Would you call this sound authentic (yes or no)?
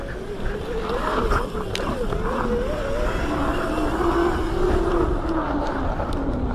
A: yes